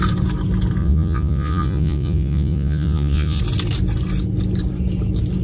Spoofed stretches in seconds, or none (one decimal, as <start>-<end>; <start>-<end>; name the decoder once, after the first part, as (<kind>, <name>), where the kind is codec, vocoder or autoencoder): 0.8-3.4 (vocoder, Vocos)